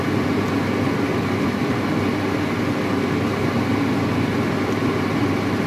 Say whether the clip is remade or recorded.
recorded